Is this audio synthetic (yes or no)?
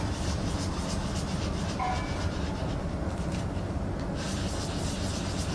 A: yes